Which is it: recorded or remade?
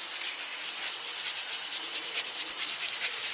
recorded